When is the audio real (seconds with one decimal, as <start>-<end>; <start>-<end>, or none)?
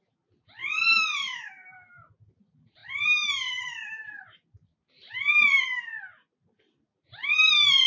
none